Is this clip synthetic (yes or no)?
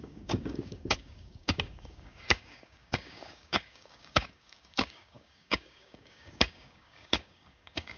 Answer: yes